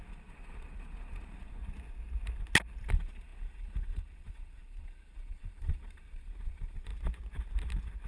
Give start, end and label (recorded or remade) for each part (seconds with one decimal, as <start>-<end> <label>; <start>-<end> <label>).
0.0-1.6 remade; 1.6-2.9 recorded; 2.9-6.9 remade; 6.9-8.1 recorded